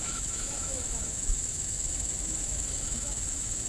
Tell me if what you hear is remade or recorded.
remade